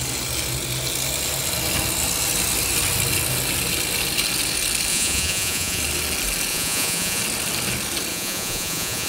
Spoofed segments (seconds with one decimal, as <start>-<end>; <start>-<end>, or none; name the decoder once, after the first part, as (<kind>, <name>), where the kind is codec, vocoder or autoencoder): 4.9-5.8 (vocoder, Vocos); 6.5-7.2; 8.1-9.1